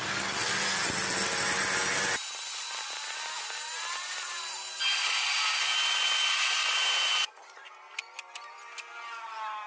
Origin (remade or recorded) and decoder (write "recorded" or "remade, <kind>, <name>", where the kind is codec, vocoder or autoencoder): recorded